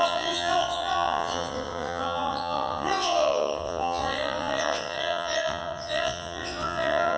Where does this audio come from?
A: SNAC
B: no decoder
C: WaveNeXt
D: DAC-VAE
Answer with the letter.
C